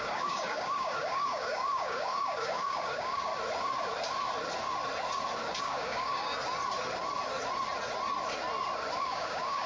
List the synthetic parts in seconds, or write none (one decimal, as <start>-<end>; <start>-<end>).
0.0-3.3; 5.6-6.3; 9.0-9.7